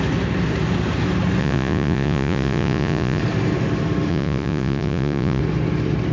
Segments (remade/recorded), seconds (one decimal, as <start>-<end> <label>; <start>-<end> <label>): 0.0-1.4 recorded; 1.4-3.2 remade; 3.2-4.1 recorded; 4.1-5.4 remade; 5.4-6.1 recorded